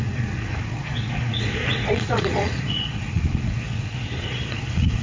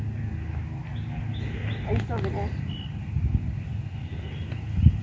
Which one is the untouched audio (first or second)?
second